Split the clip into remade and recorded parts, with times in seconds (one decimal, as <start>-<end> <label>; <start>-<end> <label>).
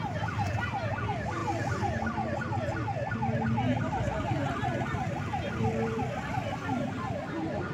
0.0-7.7 recorded